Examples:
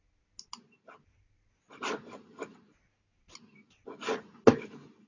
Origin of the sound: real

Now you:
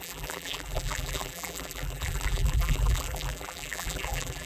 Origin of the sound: fake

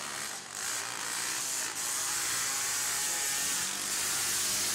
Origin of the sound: real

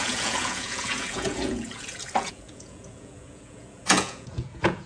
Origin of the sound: fake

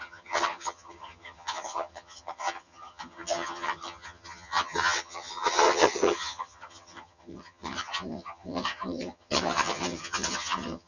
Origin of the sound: fake